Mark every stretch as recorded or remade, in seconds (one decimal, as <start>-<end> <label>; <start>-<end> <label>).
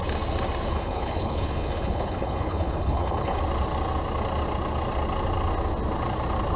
0.0-0.7 recorded; 0.7-3.4 remade; 3.4-6.6 recorded